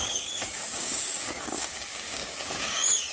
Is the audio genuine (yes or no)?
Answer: no